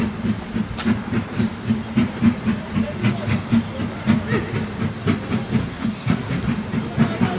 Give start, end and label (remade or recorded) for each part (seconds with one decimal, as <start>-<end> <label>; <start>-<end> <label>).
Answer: 0.0-5.6 recorded; 5.6-6.4 remade; 6.4-7.4 recorded